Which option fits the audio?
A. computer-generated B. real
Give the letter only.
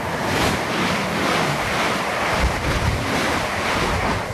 B